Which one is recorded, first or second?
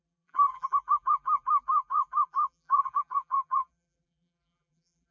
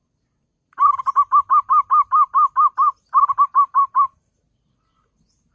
second